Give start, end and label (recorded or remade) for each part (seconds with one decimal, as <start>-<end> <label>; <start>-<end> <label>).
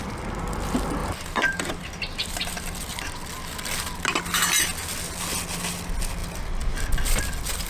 0.0-1.0 recorded; 1.0-3.0 remade; 3.0-7.7 recorded